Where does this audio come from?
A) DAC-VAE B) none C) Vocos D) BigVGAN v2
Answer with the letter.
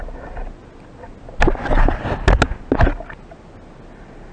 B